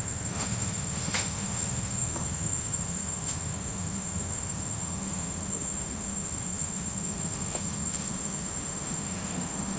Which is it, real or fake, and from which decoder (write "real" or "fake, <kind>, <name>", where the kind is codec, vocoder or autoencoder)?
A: fake, autoencoder, DAC-VAE